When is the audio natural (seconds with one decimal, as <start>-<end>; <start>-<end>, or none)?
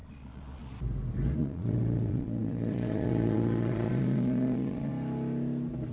0.7-1.4; 4.9-5.9